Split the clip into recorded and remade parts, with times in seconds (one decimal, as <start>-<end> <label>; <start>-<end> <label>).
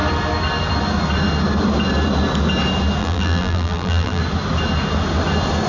0.0-3.0 recorded; 3.0-4.2 remade; 4.2-5.7 recorded